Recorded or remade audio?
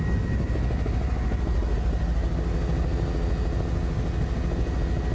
recorded